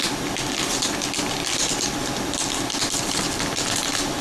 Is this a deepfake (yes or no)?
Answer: yes